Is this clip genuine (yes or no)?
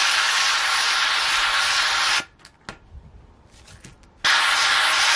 yes